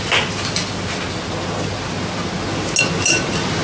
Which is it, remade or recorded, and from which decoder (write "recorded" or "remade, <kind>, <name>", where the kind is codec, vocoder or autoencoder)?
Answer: recorded